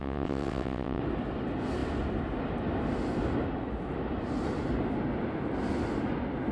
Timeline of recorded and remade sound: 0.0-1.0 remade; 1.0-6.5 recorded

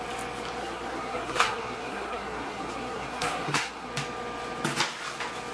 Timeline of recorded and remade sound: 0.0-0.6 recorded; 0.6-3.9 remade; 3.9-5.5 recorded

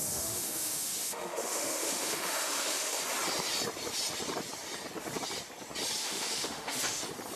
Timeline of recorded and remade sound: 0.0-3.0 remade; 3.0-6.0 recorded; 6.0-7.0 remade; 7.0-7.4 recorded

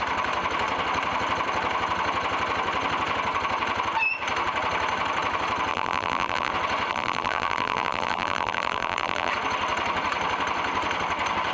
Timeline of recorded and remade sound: 0.0-5.7 recorded; 5.7-6.5 remade; 6.5-6.9 recorded; 6.9-9.3 remade; 9.3-11.5 recorded